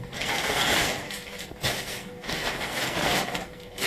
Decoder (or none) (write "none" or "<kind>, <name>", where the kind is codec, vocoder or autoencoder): codec, SNAC